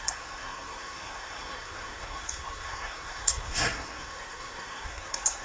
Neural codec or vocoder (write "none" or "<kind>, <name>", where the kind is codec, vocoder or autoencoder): codec, SNAC